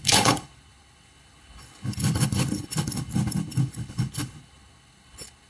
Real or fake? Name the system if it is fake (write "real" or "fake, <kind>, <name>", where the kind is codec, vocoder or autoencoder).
fake, codec, HILCodec